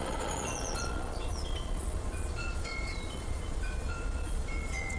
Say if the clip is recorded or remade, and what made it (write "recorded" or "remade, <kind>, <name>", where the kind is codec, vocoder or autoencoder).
remade, vocoder, Vocos